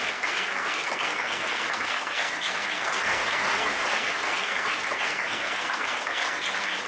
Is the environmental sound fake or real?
fake